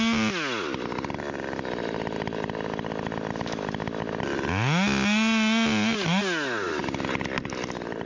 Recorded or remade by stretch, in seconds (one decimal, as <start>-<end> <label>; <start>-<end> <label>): 0.0-8.1 recorded